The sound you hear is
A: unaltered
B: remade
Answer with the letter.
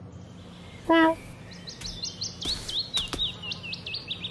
A